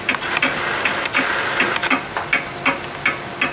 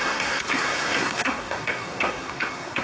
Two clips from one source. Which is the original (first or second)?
first